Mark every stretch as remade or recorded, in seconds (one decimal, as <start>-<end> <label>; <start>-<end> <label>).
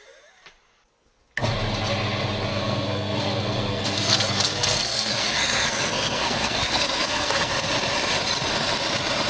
0.0-2.5 recorded; 2.5-7.5 remade; 7.5-9.3 recorded